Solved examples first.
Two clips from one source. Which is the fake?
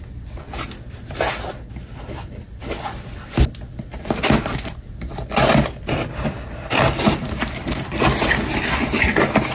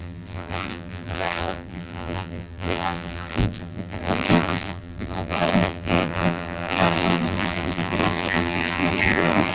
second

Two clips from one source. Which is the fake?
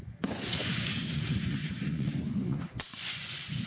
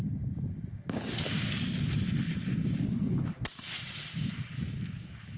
first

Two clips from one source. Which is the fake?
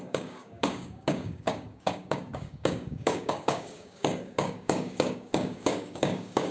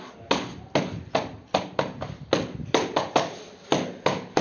first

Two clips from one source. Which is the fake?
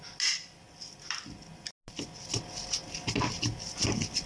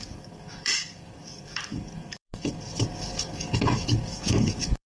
second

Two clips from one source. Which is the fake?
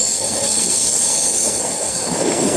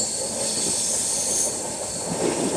first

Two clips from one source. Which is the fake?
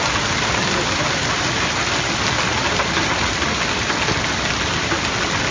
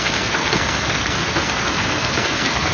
second